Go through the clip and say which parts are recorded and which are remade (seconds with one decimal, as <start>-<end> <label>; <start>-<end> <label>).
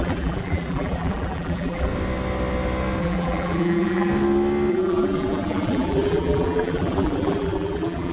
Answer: 0.0-1.9 remade; 1.9-3.0 recorded; 3.0-4.1 remade; 4.1-4.7 recorded; 4.7-8.1 remade